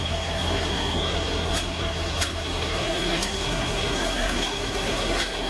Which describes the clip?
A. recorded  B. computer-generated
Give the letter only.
B